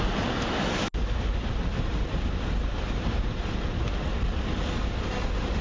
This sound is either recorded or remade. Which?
recorded